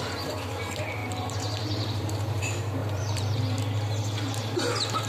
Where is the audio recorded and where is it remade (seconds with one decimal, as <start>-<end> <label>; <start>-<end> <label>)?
0.0-1.0 recorded; 1.0-2.4 remade; 2.4-2.8 recorded; 2.8-3.4 remade; 3.4-5.1 recorded